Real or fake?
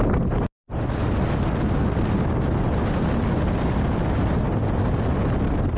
real